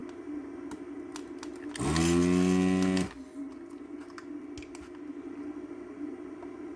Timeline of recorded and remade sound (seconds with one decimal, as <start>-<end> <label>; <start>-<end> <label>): 0.0-6.8 recorded